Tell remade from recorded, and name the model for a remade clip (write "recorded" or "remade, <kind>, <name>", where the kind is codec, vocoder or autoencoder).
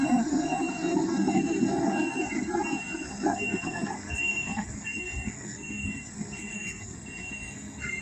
remade, codec, SNAC